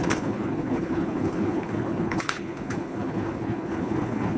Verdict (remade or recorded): remade